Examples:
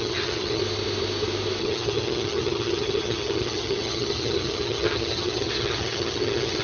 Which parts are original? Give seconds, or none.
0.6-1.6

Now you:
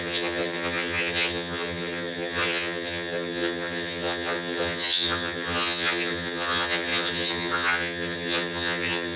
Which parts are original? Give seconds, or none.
none

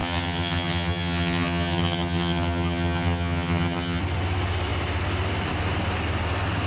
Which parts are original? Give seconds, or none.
4.0-6.7

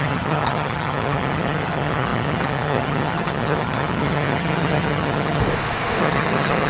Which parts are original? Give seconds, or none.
5.4-6.0

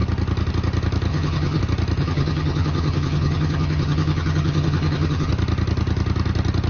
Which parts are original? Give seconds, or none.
0.0-1.1; 1.6-2.0; 5.3-6.7

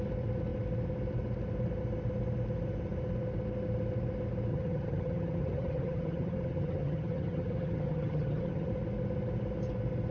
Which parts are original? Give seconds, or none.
0.0-4.5; 8.7-10.1